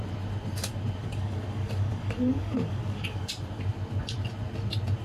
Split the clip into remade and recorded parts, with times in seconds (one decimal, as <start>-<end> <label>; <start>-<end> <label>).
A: 0.0-1.0 recorded; 1.0-3.3 remade; 3.3-5.0 recorded